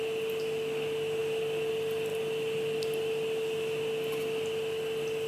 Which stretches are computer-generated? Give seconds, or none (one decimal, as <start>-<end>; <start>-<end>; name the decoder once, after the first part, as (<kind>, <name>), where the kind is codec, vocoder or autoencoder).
none